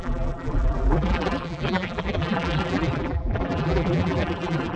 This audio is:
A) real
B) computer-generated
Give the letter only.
B